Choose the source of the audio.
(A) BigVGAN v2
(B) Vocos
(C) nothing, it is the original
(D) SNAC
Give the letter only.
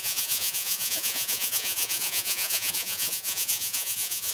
B